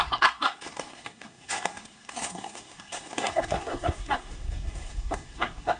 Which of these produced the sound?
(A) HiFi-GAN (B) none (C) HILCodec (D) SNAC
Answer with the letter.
D